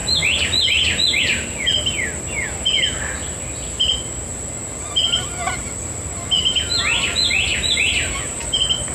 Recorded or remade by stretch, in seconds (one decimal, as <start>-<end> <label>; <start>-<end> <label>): 0.0-8.9 recorded